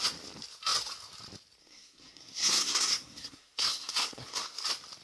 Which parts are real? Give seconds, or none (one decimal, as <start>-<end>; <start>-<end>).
0.0-1.6; 4.6-5.0